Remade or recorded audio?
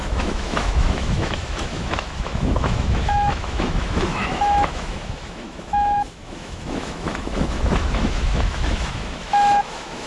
remade